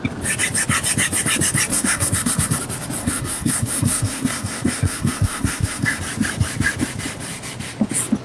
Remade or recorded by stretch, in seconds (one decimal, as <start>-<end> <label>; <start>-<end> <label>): 0.0-1.7 recorded; 1.7-2.6 remade; 2.6-3.0 recorded; 3.0-6.0 remade; 6.0-8.2 recorded